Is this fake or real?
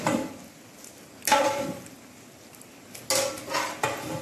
real